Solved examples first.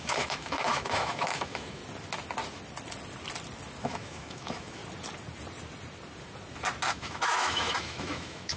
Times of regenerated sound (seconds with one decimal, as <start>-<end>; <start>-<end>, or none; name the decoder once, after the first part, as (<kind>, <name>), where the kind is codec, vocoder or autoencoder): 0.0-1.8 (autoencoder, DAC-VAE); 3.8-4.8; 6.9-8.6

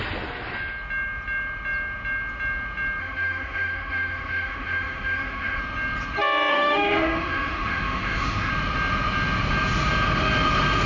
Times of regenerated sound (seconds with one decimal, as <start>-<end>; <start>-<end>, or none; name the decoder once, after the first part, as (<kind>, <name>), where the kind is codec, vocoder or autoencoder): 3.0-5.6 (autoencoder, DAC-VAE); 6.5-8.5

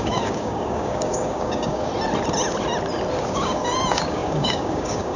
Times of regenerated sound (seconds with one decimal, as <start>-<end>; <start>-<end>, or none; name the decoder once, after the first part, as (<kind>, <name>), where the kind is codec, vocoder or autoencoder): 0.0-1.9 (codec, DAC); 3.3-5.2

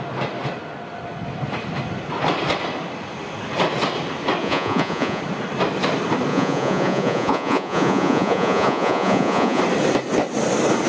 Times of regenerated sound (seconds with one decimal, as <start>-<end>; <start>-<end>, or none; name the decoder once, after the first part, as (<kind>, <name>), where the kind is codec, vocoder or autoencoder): 4.4-5.2 (vocoder, Vocos); 6.3-9.6

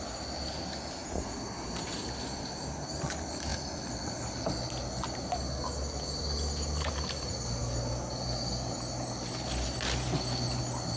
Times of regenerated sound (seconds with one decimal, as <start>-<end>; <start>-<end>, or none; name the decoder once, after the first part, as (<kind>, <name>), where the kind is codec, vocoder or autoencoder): none

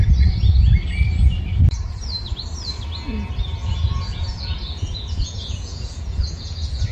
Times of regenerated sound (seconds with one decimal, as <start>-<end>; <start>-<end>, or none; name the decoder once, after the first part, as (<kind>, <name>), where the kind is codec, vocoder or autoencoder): 3.6-6.9 (vocoder, Vocos)

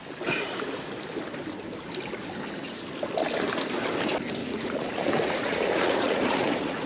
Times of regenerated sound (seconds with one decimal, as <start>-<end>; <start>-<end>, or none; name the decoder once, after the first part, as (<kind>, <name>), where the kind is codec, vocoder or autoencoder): 4.4-6.9 (vocoder, Vocos)

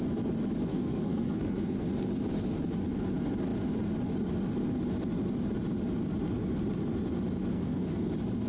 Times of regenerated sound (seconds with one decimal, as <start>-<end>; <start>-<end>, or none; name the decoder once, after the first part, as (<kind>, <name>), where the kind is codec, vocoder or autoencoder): 0.7-1.9 (codec, SNAC); 7.5-8.1